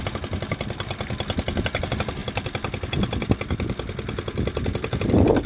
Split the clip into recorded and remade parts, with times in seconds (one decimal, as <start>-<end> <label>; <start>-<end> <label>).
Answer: 0.0-5.5 recorded